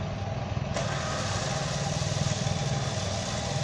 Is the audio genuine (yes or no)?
yes